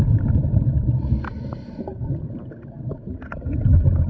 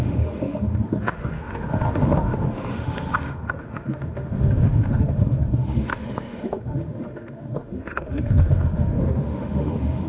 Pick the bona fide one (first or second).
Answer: first